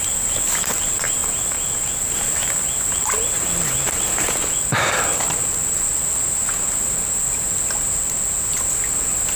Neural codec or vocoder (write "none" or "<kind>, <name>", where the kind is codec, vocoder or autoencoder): none